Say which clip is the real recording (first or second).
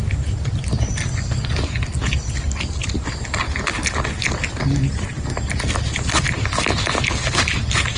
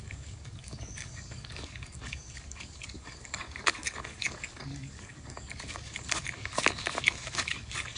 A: first